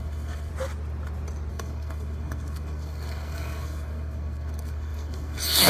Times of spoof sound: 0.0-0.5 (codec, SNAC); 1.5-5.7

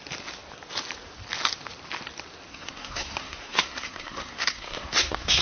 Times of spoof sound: 2.5-5.4 (codec, SNAC)

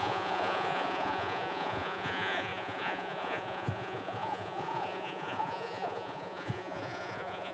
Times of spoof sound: 0.0-7.5 (vocoder, Vocos)

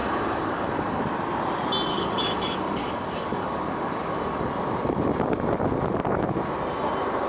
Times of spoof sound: 0.0-1.0 (codec, DAC); 1.9-4.5

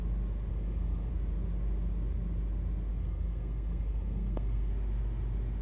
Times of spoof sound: 0.5-1.1 (codec, SNAC); 2.9-4.7

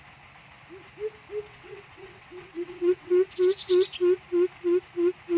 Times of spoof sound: 1.5-3.3 (vocoder, WaveNeXt)

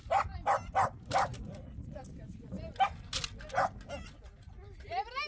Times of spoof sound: none

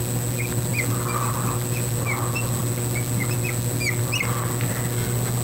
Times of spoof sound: none